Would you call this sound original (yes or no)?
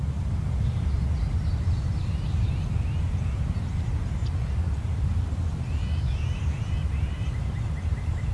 yes